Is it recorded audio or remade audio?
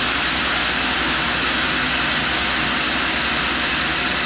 recorded